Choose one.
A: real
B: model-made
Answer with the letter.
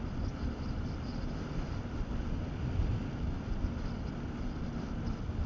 A